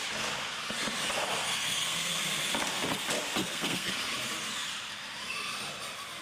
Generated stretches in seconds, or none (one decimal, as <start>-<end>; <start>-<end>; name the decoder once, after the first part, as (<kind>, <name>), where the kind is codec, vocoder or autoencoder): 1.4-2.2 (codec, SNAC); 3.4-3.9